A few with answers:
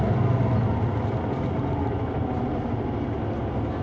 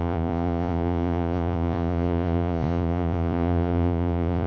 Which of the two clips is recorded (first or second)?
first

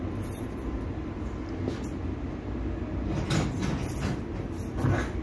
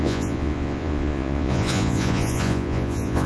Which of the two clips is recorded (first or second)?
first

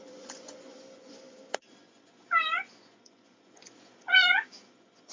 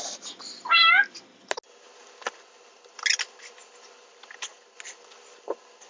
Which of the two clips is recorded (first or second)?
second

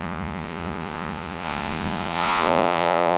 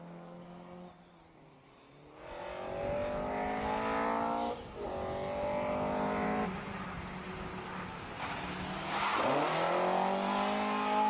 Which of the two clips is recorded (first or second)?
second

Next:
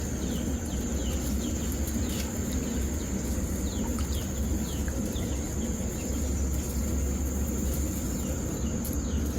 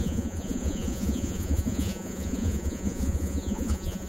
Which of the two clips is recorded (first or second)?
first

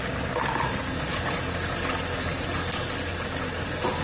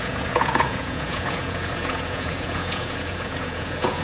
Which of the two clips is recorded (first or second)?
first